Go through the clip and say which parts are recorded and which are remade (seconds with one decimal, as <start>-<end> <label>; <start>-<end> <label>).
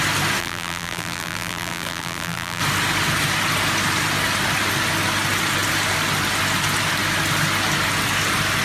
0.0-0.4 recorded; 0.4-2.6 remade; 2.6-8.6 recorded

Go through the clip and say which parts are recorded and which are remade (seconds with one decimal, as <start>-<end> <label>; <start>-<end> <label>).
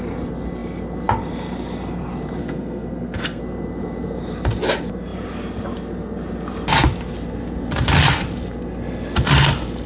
0.0-2.4 recorded; 2.4-3.4 remade; 3.4-9.9 recorded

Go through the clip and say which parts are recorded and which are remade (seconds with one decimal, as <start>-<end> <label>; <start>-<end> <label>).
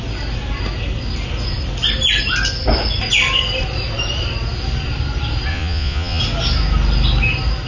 0.0-5.5 recorded; 5.5-6.2 remade; 6.2-7.7 recorded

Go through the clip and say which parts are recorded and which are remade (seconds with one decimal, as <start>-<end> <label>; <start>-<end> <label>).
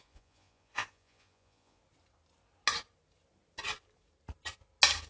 0.0-1.8 remade; 1.8-5.1 recorded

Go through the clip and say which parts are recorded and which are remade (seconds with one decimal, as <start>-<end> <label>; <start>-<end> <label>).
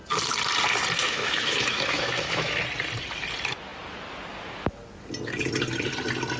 0.0-1.0 recorded; 1.0-2.6 remade; 2.6-6.4 recorded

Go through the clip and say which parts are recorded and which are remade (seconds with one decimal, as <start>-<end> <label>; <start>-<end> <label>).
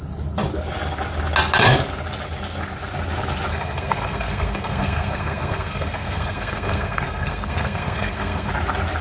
0.0-3.5 recorded; 3.5-8.5 remade; 8.5-9.0 recorded